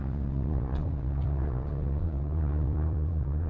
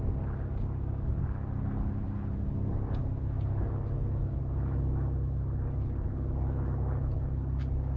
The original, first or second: second